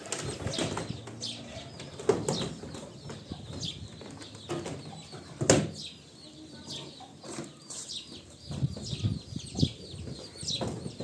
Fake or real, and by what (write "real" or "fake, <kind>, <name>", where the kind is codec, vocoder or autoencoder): real